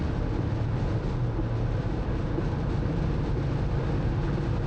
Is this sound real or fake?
real